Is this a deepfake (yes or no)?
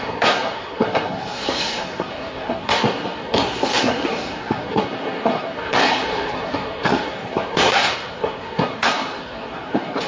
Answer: yes